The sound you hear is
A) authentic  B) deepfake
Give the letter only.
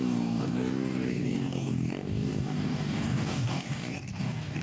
B